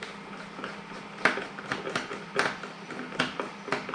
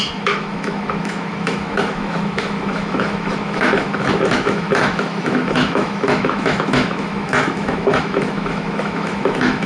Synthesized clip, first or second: second